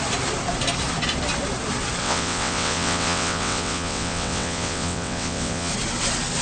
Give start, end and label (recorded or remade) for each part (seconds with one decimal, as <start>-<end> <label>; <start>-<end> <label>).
0.0-2.0 recorded; 2.0-5.7 remade; 5.7-6.4 recorded